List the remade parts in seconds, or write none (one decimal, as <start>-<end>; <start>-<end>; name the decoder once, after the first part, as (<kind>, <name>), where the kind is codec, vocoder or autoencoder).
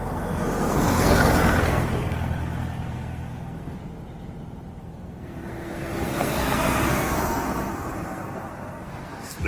0.0-3.8 (codec, SNAC); 4.8-9.5